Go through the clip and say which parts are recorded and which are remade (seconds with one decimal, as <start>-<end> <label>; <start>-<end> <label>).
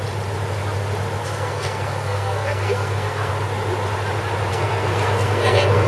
0.0-1.2 recorded; 1.2-3.3 remade; 3.3-4.5 recorded; 4.5-5.9 remade